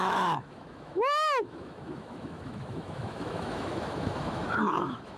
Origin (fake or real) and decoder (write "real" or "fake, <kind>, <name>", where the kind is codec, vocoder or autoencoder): fake, autoencoder, DAC-VAE